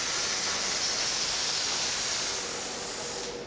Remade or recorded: recorded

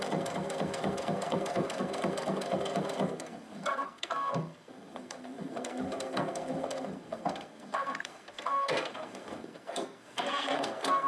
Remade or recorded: remade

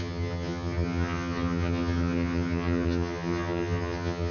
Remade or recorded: remade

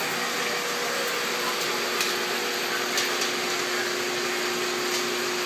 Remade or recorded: recorded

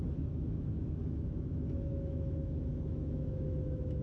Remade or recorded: remade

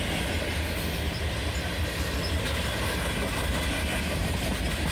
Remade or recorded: recorded